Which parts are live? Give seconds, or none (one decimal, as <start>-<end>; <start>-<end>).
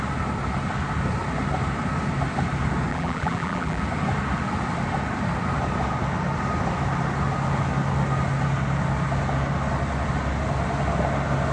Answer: 0.0-2.9; 3.8-11.5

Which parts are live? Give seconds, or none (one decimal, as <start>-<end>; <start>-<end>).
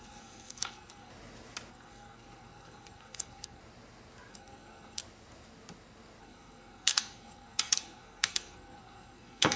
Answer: 1.1-1.7; 3.6-4.3; 5.0-6.2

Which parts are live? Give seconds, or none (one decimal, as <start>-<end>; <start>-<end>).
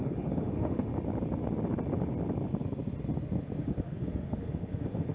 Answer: 0.9-3.6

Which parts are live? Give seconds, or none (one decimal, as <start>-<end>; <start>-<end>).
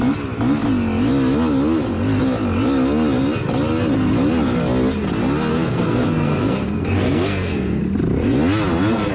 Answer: 0.0-5.5; 7.8-9.1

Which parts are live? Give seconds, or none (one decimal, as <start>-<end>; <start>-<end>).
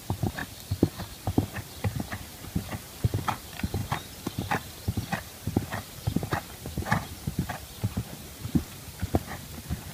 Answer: 0.4-1.2; 2.3-3.3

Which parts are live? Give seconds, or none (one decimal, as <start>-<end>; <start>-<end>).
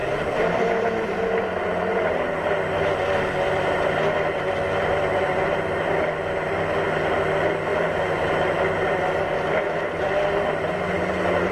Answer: 0.0-11.5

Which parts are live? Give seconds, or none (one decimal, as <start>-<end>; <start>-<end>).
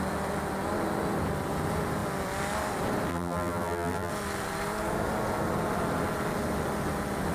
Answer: 0.0-3.1; 4.1-7.3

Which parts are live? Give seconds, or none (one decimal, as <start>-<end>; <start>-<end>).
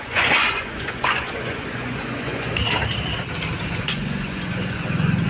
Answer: 2.6-3.6